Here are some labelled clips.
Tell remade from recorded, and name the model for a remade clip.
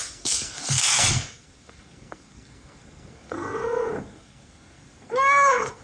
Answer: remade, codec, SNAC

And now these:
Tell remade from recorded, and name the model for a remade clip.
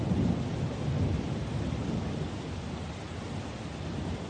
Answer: remade, vocoder, BigVGAN v2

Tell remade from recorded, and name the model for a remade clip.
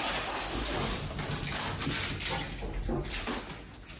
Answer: recorded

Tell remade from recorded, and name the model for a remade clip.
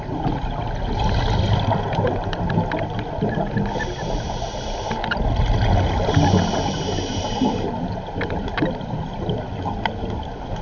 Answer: recorded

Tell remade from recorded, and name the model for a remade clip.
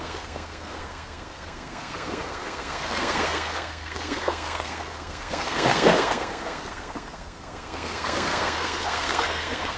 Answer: remade, codec, SNAC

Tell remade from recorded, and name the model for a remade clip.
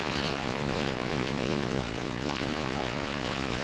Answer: remade, vocoder, Vocos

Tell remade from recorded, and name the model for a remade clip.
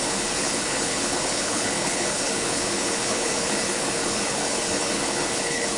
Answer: remade, codec, HILCodec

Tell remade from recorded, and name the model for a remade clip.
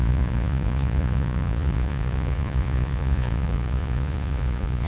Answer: remade, vocoder, Vocos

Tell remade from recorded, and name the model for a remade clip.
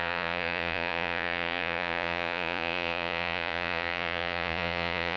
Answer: remade, vocoder, Vocos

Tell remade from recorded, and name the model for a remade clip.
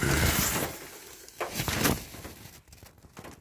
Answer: recorded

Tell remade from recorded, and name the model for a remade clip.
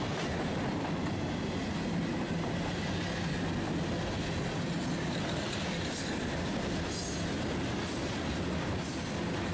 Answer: recorded